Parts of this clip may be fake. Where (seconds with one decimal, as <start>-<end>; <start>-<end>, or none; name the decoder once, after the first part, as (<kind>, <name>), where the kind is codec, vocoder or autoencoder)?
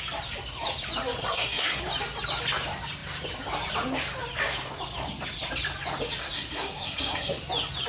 1.2-1.8 (codec, SNAC); 6.2-7.4